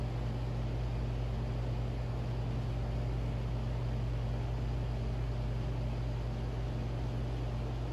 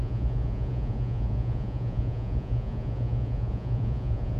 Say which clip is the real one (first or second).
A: first